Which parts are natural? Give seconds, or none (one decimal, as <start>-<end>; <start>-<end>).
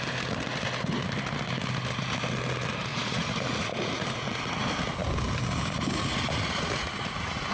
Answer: 0.0-2.9; 4.7-6.0